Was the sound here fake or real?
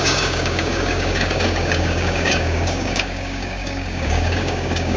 fake